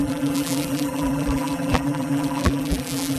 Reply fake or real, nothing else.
fake